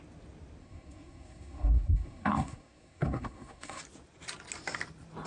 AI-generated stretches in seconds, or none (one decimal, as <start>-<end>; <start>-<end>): 0.6-3.8